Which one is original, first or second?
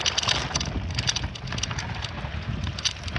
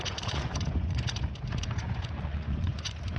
first